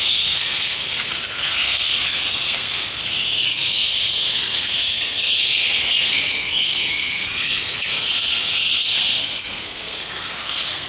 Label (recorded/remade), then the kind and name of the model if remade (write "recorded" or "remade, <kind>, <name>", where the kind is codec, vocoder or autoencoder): remade, codec, SNAC